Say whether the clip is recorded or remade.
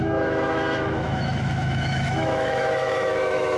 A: remade